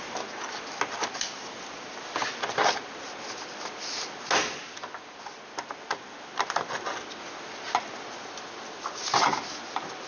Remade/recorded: recorded